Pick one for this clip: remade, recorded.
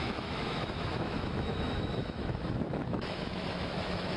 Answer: remade